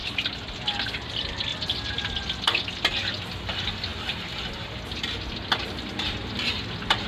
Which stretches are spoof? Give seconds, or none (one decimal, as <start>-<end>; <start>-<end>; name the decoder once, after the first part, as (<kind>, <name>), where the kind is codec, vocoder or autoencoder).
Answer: 0.0-1.1 (vocoder, BigVGAN v2); 3.9-4.8